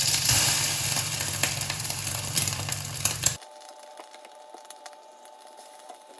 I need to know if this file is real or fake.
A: fake